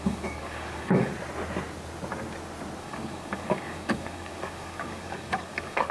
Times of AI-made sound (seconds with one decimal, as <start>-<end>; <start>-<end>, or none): 0.0-1.1; 2.8-5.9